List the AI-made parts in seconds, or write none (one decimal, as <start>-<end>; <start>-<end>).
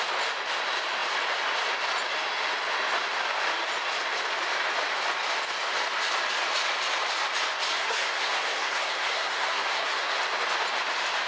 7.8-10.2